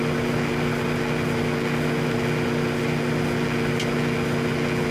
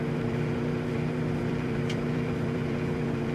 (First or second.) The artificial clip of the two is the second